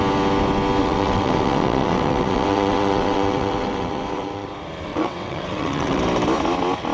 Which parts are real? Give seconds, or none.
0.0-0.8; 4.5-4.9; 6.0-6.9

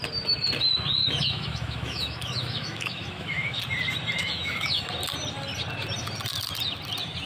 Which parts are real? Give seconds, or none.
0.0-1.0; 3.6-4.2; 4.8-7.3